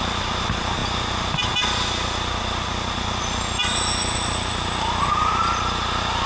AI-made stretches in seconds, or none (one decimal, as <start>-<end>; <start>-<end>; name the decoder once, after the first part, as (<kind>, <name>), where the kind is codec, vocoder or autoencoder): none